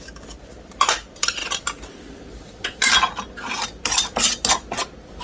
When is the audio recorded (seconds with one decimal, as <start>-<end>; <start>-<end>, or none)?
0.0-5.2